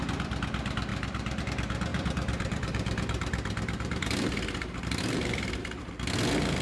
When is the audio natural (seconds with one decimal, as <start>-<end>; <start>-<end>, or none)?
0.0-0.9; 1.4-1.9; 5.9-6.6